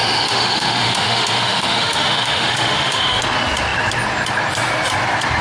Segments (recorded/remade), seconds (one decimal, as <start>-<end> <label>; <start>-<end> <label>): 0.0-3.2 remade; 3.2-5.4 recorded